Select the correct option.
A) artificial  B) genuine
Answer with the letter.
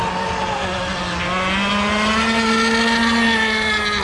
B